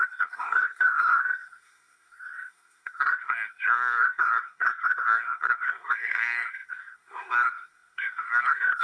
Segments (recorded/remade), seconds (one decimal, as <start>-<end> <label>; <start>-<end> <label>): 0.0-8.8 remade